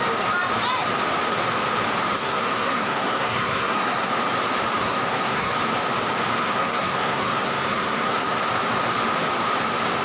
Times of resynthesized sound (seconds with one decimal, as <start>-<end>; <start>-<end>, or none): 2.1-4.1; 4.8-5.5; 6.4-8.5